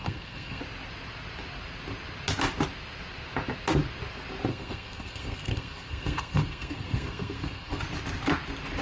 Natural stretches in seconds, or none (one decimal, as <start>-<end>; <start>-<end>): 0.6-4.5; 7.8-8.8

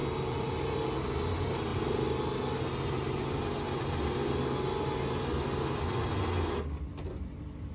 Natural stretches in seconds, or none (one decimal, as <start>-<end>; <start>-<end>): 0.0-7.7

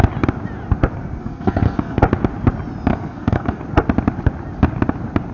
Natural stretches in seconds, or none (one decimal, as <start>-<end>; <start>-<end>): 0.0-1.2; 2.0-2.9; 3.6-5.3

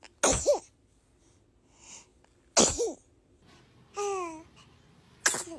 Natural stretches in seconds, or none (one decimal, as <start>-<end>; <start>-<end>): 0.0-5.6

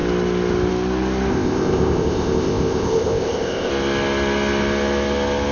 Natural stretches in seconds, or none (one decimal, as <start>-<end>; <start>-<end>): 0.0-1.3; 3.7-5.5

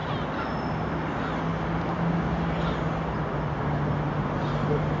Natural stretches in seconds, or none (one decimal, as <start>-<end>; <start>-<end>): 0.0-5.0